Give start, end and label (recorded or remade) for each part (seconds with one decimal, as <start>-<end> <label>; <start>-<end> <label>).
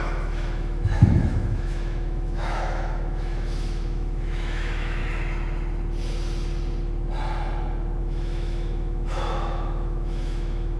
0.0-5.0 remade; 5.0-8.0 recorded; 8.0-10.8 remade